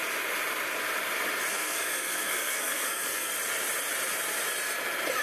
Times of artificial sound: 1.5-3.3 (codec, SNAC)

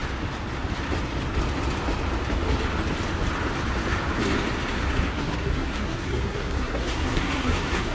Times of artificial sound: 4.7-7.9 (codec, SNAC)

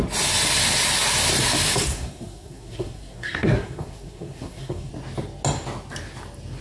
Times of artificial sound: 1.9-4.9 (codec, SNAC)

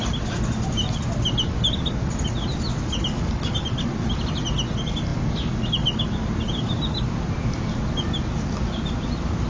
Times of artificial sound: none

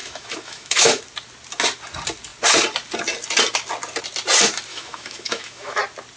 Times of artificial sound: 0.0-1.0 (autoencoder, DAC-VAE); 4.7-5.8

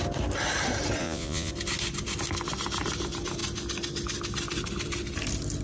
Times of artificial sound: 1.0-1.5 (vocoder, Vocos)